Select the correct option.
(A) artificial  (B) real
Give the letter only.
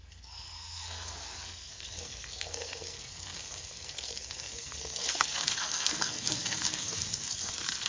A